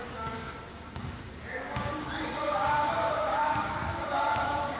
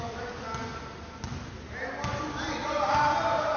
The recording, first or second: second